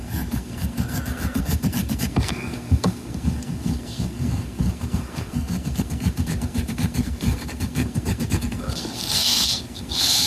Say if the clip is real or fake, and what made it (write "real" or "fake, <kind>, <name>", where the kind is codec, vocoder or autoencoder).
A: fake, codec, SNAC